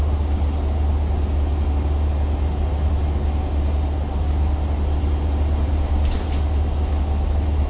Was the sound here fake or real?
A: real